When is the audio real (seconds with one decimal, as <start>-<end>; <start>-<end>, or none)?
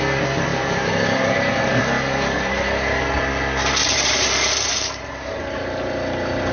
0.0-0.5; 3.0-3.8; 5.4-6.5